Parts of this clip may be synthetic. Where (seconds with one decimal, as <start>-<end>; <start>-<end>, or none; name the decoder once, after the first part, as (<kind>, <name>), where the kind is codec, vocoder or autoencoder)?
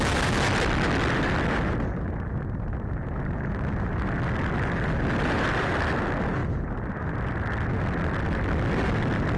none